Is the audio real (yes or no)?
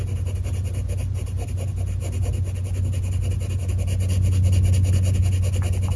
yes